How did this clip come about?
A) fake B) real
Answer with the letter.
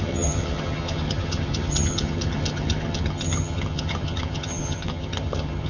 A